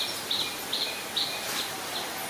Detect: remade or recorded recorded